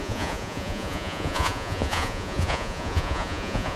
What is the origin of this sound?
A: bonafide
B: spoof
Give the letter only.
B